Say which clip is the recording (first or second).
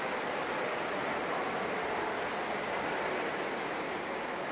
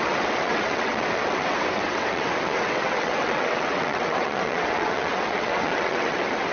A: first